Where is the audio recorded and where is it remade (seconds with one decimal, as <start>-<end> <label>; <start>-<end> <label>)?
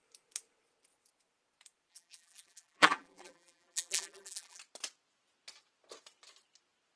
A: 0.0-1.9 recorded; 1.9-4.6 remade; 4.6-7.0 recorded